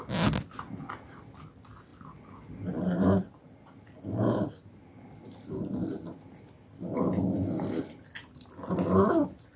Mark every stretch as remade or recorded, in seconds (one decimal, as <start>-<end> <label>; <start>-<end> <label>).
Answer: 0.0-9.6 recorded

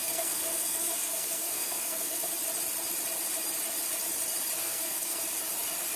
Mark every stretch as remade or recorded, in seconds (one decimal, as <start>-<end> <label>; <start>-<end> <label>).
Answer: 0.0-2.3 remade; 2.3-4.6 recorded; 4.6-5.2 remade; 5.2-6.0 recorded